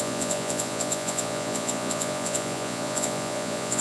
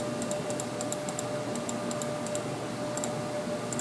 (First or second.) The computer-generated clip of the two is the first